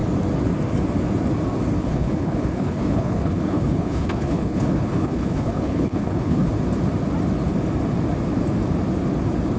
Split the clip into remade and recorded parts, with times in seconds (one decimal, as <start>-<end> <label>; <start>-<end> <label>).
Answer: 0.0-1.8 recorded; 1.8-6.5 remade; 6.5-9.6 recorded